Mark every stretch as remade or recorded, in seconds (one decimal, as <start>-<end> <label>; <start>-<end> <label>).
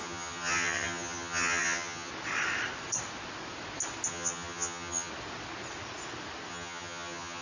0.0-2.1 remade; 2.1-4.1 recorded; 4.1-5.1 remade; 5.1-6.5 recorded; 6.5-7.4 remade